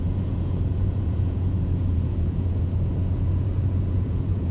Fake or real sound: fake